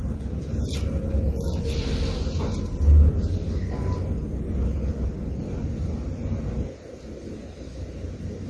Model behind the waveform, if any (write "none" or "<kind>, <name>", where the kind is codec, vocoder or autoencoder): none